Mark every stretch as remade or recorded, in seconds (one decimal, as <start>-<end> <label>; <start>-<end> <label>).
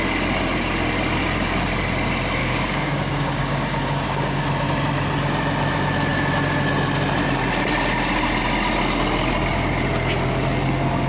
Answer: 0.0-2.4 recorded; 2.4-4.4 remade; 4.4-11.1 recorded